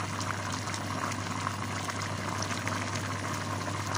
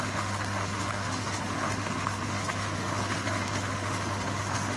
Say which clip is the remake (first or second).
second